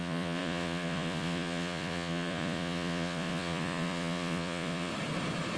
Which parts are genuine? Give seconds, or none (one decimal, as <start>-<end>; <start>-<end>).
4.9-5.6

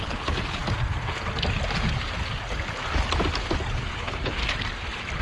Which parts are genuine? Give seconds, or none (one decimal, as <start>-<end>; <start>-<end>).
0.6-3.7; 4.4-5.2